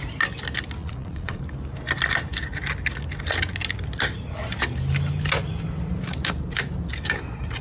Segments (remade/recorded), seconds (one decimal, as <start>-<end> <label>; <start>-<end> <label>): 0.0-0.8 recorded; 0.8-1.4 remade; 1.4-7.6 recorded